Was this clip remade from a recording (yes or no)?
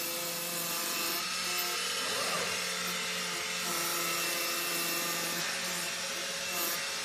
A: no